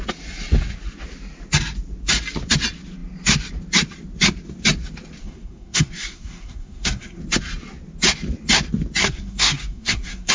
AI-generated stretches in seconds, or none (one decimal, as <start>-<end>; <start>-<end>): 5.2-7.2; 9.0-10.3